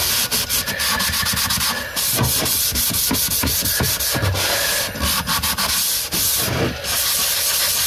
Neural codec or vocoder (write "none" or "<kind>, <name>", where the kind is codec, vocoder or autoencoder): none